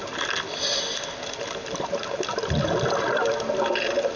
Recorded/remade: recorded